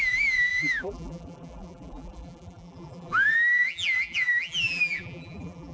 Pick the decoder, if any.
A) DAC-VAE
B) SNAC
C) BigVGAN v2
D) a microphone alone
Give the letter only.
C